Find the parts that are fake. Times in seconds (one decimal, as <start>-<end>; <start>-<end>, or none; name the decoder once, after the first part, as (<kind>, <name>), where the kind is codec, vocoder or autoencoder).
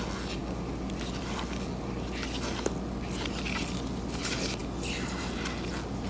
none